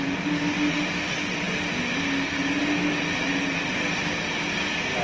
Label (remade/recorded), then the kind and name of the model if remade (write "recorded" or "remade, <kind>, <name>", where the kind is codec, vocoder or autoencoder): recorded